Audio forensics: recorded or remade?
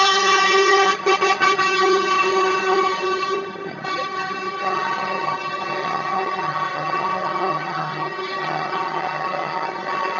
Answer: remade